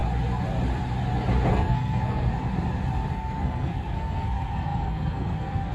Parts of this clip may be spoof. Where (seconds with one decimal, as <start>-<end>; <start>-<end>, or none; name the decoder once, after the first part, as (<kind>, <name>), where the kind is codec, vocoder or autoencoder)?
1.5-2.3 (codec, SNAC); 3.1-5.7